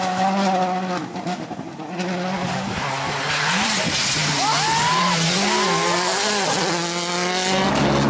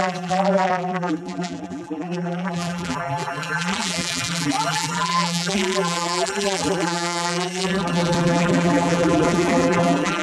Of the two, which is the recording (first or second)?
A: first